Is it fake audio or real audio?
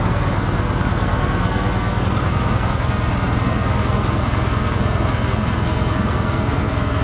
fake